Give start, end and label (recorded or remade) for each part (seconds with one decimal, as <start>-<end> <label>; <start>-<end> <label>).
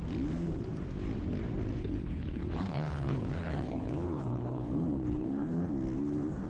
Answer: 0.0-1.8 recorded; 1.8-5.7 remade; 5.7-6.5 recorded